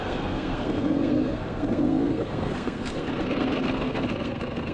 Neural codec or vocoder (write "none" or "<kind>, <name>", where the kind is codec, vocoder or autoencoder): codec, SNAC